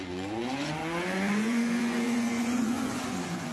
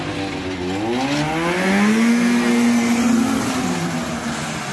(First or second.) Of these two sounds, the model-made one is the first